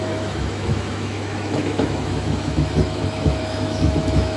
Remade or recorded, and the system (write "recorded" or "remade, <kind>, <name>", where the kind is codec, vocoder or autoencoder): remade, autoencoder, DAC-VAE